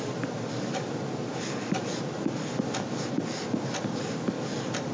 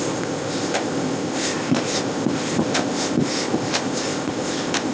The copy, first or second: second